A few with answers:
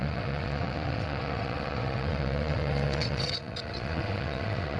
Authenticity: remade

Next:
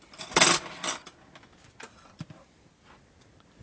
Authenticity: recorded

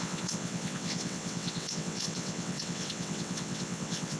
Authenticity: remade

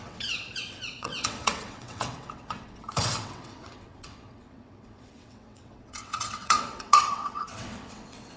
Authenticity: remade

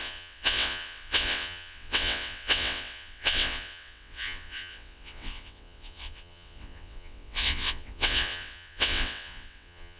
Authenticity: remade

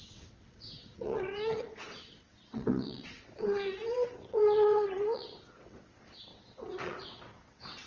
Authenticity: remade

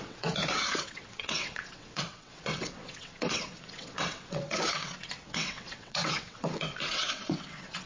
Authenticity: remade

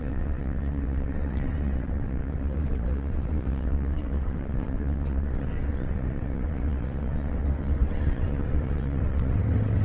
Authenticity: remade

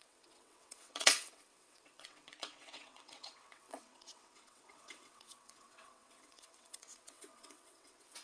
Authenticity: remade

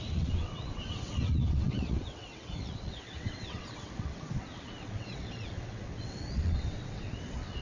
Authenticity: remade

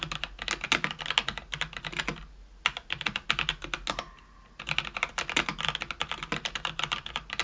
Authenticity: recorded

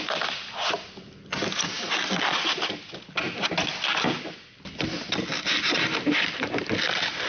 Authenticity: recorded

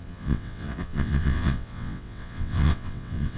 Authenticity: remade